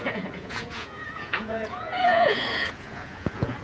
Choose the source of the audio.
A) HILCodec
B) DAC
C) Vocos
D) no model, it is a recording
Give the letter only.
C